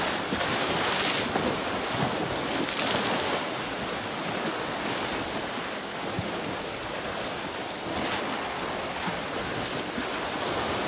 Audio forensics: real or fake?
real